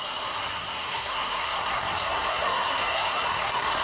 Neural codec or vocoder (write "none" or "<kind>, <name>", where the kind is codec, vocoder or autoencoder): codec, SNAC